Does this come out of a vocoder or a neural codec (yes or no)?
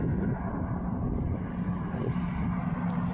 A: no